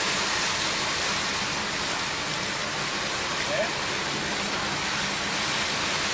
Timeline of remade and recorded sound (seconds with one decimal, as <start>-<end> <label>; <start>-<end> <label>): 0.0-6.1 recorded